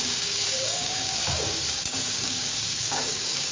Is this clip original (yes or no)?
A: no